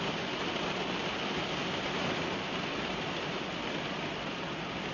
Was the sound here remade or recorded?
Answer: remade